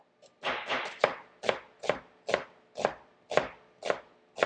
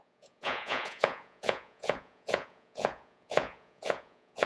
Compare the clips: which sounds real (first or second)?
first